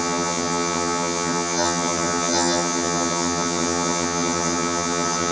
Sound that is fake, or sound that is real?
fake